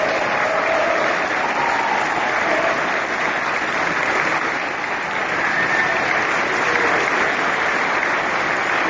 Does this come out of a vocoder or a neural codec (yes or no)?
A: no